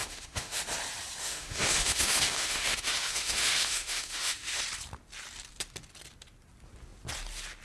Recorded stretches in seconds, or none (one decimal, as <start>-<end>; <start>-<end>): 0.6-1.2; 4.6-7.6